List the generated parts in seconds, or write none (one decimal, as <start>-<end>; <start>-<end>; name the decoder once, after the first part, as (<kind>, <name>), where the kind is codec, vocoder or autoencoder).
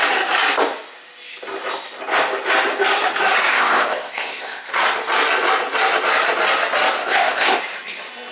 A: 3.5-4.7 (codec, ZipCodec); 7.0-7.6